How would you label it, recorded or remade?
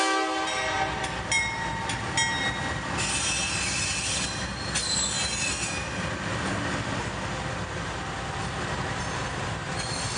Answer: recorded